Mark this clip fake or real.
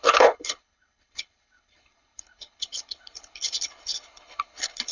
fake